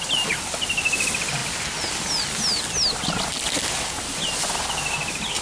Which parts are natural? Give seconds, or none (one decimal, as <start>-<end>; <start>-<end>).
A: 0.0-5.4